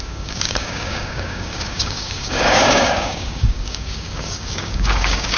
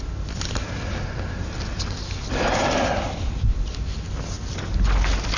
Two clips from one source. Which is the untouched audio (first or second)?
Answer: second